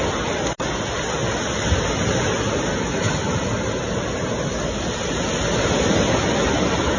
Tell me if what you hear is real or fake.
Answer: real